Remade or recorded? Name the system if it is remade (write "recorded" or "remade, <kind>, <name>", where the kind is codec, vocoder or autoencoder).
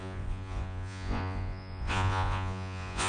remade, vocoder, Vocos